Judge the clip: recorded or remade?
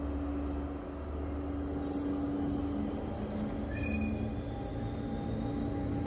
recorded